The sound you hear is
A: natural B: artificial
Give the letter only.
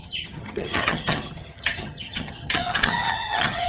B